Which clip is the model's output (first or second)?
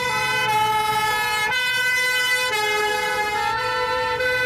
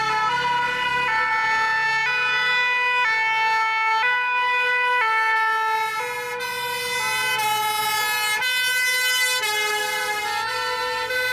first